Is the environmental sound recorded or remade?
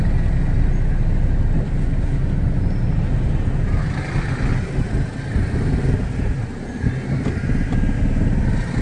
recorded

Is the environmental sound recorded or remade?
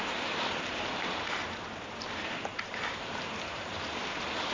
remade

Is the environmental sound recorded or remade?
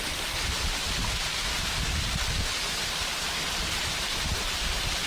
recorded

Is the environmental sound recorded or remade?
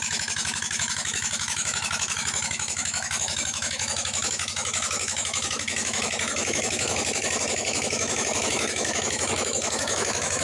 remade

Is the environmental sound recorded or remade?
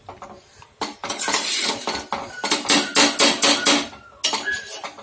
recorded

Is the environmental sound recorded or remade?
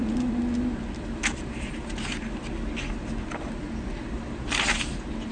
recorded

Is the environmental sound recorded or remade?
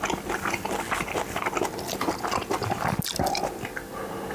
recorded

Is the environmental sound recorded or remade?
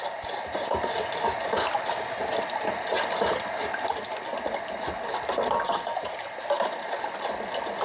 recorded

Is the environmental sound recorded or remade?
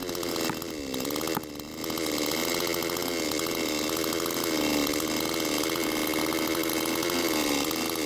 recorded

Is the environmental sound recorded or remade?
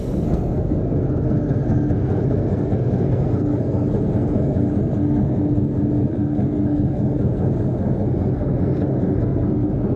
remade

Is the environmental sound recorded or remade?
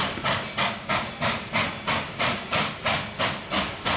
recorded